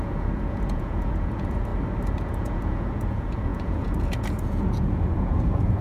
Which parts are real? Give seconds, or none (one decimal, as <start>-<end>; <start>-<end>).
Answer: 1.7-2.2